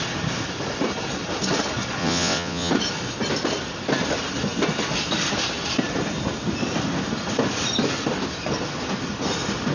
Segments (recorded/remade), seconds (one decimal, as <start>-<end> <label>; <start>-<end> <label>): 0.0-2.0 recorded; 2.0-2.7 remade; 2.7-9.7 recorded